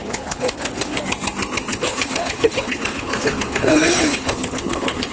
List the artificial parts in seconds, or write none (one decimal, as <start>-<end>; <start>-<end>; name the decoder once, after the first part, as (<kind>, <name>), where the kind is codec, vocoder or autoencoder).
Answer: 0.0-1.0 (codec, HILCodec); 1.7-5.1